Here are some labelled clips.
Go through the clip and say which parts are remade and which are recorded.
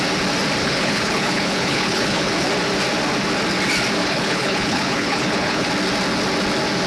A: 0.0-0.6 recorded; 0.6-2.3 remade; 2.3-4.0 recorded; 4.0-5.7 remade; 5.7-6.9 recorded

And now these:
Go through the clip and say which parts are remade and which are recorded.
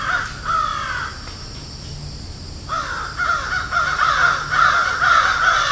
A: 0.0-5.7 recorded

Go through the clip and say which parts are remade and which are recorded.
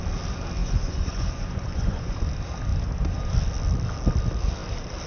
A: 0.0-0.6 recorded; 0.6-2.3 remade; 2.3-5.1 recorded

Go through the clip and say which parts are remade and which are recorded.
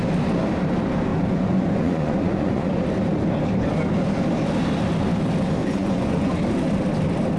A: 0.0-1.1 recorded; 1.1-2.8 remade; 2.8-5.6 recorded; 5.6-6.3 remade; 6.3-7.4 recorded